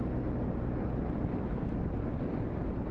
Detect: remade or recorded recorded